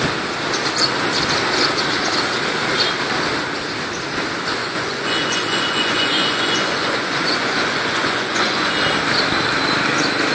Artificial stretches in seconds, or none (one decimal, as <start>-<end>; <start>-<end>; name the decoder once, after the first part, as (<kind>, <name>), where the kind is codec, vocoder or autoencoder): 4.6-8.7 (vocoder, Vocos)